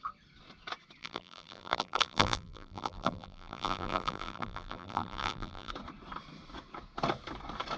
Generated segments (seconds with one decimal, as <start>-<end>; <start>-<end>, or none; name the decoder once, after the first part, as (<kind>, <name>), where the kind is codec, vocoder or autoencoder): 1.0-5.7 (vocoder, BigVGAN v2)

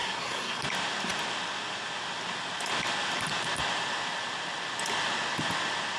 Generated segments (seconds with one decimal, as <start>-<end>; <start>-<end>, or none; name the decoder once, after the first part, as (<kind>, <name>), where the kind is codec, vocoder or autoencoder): 0.0-0.6 (codec, SNAC)

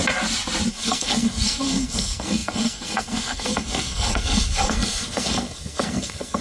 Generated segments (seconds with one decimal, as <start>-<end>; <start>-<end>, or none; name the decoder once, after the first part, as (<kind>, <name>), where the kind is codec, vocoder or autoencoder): 0.7-6.4 (codec, SNAC)

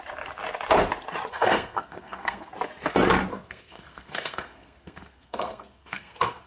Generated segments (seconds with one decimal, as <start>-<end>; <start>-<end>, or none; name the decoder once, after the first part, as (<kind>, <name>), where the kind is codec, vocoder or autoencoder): 1.3-2.5 (codec, SNAC); 3.3-6.5

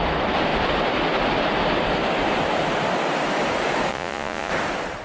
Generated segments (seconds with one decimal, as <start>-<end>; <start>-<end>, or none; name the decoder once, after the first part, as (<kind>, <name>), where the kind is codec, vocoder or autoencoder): 3.9-4.5 (vocoder, Vocos)

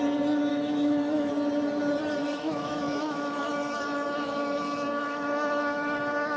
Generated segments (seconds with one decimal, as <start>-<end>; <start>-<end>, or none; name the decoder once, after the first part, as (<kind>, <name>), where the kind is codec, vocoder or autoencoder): 0.5-1.3 (autoencoder, DAC-VAE); 2.2-6.0

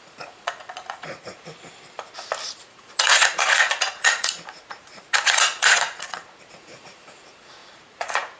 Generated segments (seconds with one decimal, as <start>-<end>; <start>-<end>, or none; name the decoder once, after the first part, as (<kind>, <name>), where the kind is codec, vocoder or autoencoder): 0.0-1.5 (vocoder, Vocos); 2.5-8.4

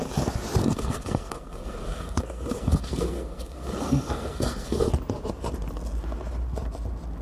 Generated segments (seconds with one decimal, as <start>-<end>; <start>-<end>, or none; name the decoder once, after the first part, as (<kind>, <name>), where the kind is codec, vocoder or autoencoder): 0.6-4.9 (codec, SNAC)